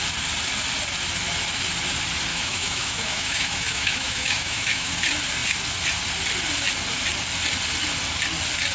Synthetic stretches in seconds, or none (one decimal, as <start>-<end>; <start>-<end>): 2.3-4.9